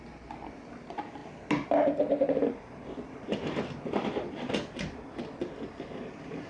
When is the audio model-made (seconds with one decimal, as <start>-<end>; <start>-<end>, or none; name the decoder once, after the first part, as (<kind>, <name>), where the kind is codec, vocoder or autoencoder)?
none